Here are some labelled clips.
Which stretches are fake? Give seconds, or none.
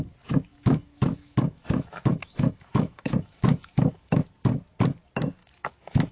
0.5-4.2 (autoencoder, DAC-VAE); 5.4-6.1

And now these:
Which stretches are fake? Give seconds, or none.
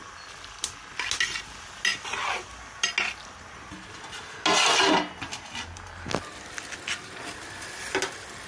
none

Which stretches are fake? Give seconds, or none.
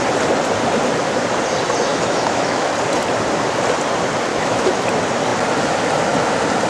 1.9-2.7 (autoencoder, DAC-VAE); 4.3-4.8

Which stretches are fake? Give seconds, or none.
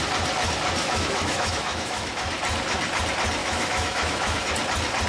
0.8-2.1 (autoencoder, DAC-VAE); 3.4-4.5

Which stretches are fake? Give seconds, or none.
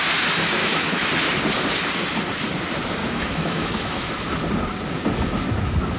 0.6-1.1 (autoencoder, DAC-VAE); 3.0-4.2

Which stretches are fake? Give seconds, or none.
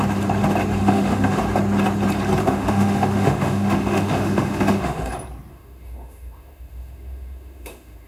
0.8-1.4 (autoencoder, DAC-VAE); 2.4-5.1; 5.5-8.1